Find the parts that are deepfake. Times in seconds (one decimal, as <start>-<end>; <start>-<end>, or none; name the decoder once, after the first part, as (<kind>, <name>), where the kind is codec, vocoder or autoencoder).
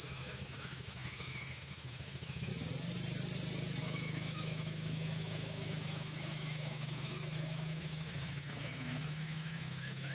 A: 0.0-2.5 (autoencoder, DAC-VAE); 3.8-10.1